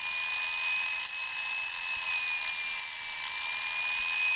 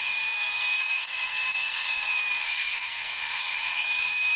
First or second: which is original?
first